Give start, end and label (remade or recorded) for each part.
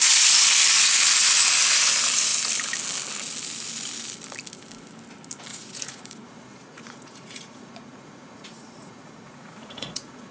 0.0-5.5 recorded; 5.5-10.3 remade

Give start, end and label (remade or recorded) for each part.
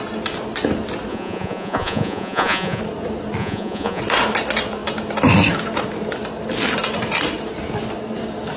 0.0-1.1 recorded; 1.1-2.8 remade; 2.8-3.4 recorded; 3.4-4.0 remade; 4.0-8.6 recorded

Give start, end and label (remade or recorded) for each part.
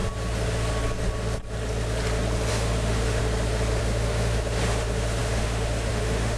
0.0-2.5 recorded; 2.5-3.2 remade; 3.2-3.8 recorded; 3.8-6.4 remade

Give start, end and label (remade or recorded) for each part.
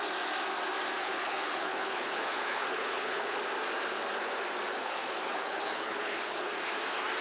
0.0-1.0 recorded; 1.0-3.4 remade; 3.4-4.8 recorded; 4.8-6.5 remade; 6.5-7.2 recorded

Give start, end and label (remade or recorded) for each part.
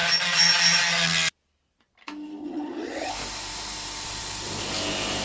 0.0-2.4 recorded; 2.4-3.1 remade; 3.1-5.2 recorded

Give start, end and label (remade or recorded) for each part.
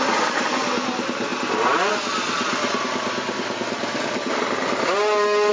0.0-5.5 recorded